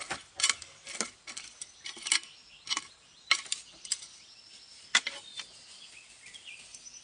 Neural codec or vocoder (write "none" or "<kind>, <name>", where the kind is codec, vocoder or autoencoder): none